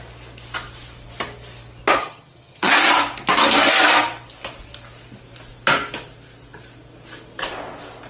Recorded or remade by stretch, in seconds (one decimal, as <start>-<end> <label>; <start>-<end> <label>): 0.0-2.0 recorded; 2.0-2.7 remade; 2.7-8.1 recorded